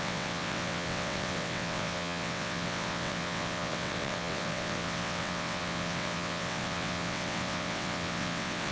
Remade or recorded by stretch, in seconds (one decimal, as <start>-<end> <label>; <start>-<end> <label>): 0.0-8.7 remade